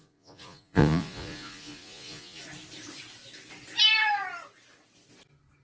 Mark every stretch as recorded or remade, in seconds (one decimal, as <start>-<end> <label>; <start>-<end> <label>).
0.0-2.4 remade; 2.4-5.6 recorded